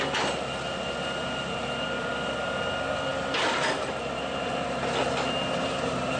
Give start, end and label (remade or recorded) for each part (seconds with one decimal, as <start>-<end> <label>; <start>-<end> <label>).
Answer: 0.0-6.2 recorded